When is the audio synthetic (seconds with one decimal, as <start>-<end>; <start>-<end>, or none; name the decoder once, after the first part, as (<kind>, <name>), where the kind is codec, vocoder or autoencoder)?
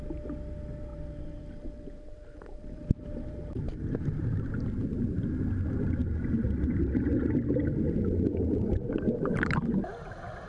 0.9-4.2 (vocoder, BigVGAN v2); 6.0-7.1